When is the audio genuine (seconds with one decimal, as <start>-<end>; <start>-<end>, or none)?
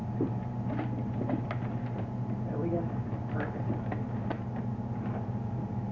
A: 2.7-3.2; 3.7-5.9